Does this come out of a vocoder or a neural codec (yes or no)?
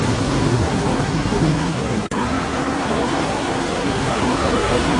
yes